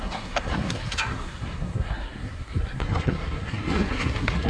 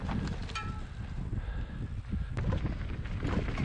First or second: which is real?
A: second